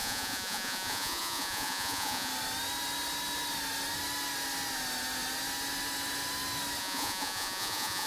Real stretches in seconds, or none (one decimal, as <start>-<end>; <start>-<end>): 2.3-6.8